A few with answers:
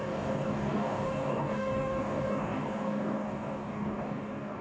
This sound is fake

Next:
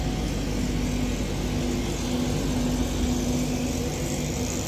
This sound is real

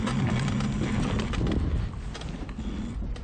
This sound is real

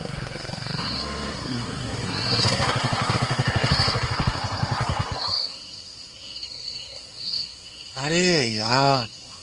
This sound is fake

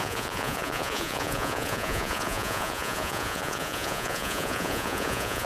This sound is fake